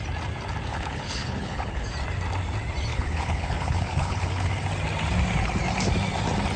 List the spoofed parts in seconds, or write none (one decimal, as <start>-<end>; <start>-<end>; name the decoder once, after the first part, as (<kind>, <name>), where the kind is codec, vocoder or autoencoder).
0.7-1.8 (codec, HILCodec); 2.9-4.5

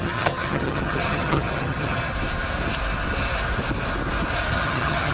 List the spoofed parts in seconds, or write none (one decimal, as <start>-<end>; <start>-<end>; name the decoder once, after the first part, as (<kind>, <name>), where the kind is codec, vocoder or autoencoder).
0.0-2.1 (vocoder, HiFi-GAN); 4.5-5.1

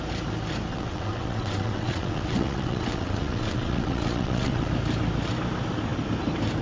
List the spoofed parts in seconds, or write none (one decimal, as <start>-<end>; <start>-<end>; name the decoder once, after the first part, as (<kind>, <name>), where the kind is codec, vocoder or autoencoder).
0.7-4.7 (vocoder, WaveNeXt)

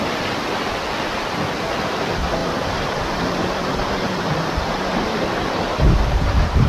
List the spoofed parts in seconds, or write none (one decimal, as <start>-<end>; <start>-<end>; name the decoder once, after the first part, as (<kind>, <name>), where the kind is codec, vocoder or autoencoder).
2.4-6.7 (vocoder, BigVGAN v2)

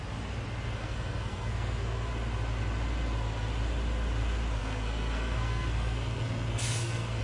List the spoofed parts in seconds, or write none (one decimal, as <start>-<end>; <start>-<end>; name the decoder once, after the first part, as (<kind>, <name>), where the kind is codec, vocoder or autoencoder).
0.8-2.1 (codec, SNAC); 4.6-7.2

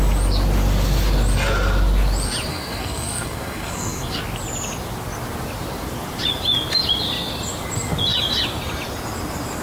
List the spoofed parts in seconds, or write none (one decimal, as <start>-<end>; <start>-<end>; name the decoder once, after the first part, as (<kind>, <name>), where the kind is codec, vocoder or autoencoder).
2.5-4.2 (codec, SNAC)